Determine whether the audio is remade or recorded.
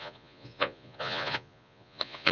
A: remade